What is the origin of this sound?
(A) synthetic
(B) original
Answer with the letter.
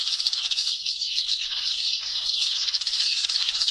A